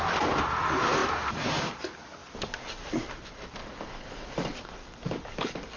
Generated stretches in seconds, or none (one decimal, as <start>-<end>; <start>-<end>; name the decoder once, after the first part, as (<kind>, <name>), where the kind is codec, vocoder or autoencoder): 3.6-5.8 (codec, DAC)